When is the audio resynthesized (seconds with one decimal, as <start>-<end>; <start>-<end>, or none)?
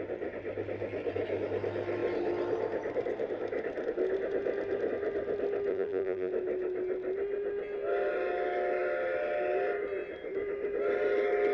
5.7-6.3